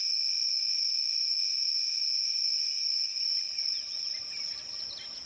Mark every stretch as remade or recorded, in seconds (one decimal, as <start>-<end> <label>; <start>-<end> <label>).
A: 0.0-5.2 recorded